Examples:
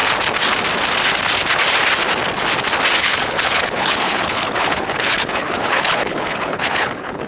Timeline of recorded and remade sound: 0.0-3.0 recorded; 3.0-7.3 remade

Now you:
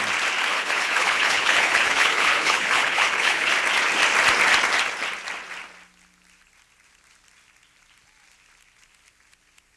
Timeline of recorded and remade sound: 0.0-0.5 recorded; 0.5-3.5 remade; 3.5-9.8 recorded

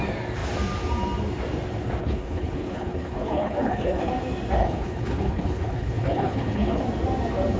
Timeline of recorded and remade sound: 0.0-2.0 recorded; 2.0-4.1 remade; 4.1-4.6 recorded; 4.6-6.8 remade; 6.8-7.6 recorded